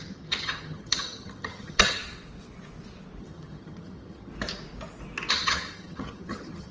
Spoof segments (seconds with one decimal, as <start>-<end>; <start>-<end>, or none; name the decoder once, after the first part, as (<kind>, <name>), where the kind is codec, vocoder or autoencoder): 0.0-2.0 (vocoder, HiFi-GAN); 3.2-4.3; 5.3-6.7